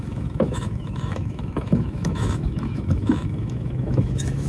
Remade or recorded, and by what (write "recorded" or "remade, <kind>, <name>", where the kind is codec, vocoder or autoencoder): remade, autoencoder, DAC-VAE